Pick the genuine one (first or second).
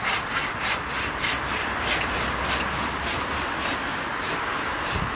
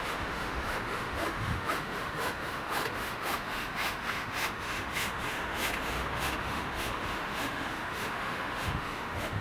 first